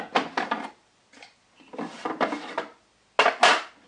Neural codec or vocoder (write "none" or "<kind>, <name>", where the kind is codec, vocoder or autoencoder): none